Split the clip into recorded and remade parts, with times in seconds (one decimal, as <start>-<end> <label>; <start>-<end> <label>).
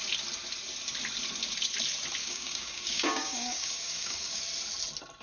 0.0-2.2 recorded; 2.2-4.4 remade; 4.4-5.2 recorded